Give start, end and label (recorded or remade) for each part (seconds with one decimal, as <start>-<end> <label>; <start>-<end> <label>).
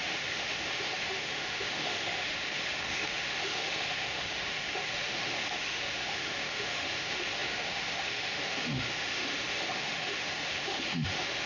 0.0-11.5 remade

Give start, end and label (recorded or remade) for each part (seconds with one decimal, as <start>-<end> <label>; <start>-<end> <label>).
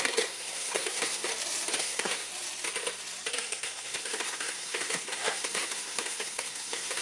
0.0-1.3 remade; 1.3-1.8 recorded; 1.8-2.3 remade; 2.3-3.3 recorded; 3.3-7.0 remade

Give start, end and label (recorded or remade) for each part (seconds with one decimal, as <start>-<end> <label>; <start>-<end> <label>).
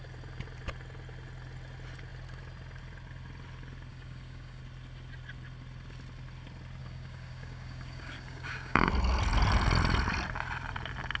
0.0-3.9 recorded; 3.9-4.6 remade; 4.6-6.8 recorded; 6.8-8.9 remade; 8.9-11.2 recorded